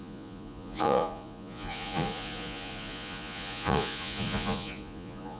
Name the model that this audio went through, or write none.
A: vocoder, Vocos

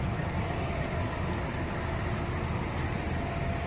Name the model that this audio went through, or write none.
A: none